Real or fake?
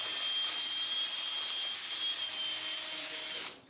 real